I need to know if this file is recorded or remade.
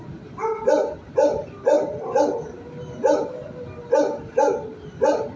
recorded